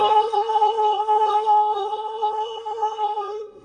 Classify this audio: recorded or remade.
remade